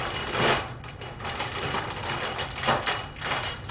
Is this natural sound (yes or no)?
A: yes